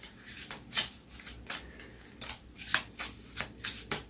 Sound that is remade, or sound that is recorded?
recorded